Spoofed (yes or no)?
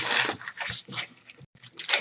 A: yes